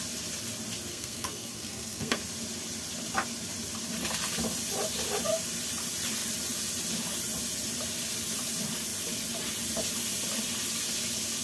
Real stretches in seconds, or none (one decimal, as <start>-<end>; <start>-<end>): 0.0-0.9; 2.2-11.4